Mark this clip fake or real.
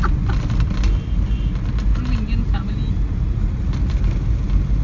real